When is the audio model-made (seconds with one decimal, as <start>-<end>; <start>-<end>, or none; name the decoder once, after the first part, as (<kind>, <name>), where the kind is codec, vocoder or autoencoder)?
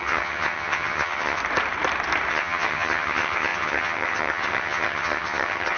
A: 0.0-1.4 (vocoder, HiFi-GAN); 2.3-5.8